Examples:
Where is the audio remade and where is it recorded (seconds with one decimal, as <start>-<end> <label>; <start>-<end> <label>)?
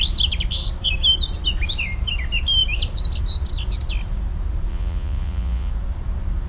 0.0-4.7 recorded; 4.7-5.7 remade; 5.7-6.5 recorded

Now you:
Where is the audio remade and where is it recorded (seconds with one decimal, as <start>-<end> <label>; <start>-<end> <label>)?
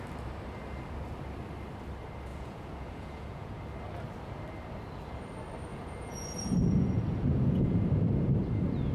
0.0-2.3 recorded; 2.3-3.6 remade; 3.6-5.7 recorded; 5.7-7.8 remade; 7.8-8.9 recorded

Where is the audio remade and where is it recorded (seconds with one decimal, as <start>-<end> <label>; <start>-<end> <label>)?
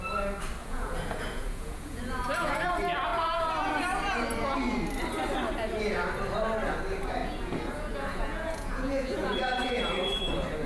0.0-0.6 recorded; 0.6-2.6 remade; 2.6-7.2 recorded; 7.2-9.8 remade; 9.8-10.7 recorded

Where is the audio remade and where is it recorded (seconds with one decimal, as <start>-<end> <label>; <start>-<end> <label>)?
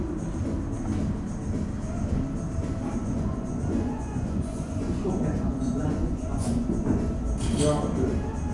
0.0-3.0 recorded; 3.0-7.1 remade; 7.1-8.5 recorded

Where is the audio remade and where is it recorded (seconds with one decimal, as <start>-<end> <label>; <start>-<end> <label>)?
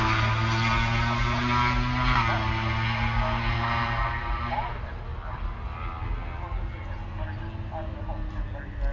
0.0-8.9 recorded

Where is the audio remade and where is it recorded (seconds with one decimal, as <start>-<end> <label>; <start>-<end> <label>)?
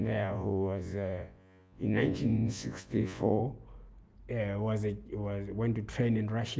0.0-3.4 remade; 3.4-6.6 recorded